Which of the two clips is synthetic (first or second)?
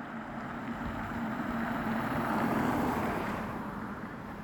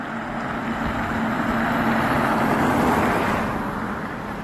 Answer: first